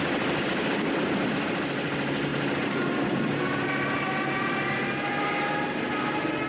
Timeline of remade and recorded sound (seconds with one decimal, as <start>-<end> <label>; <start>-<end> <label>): 0.0-6.5 recorded